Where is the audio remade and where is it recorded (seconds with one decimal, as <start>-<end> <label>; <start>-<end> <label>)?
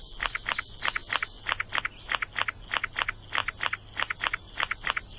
0.0-5.2 recorded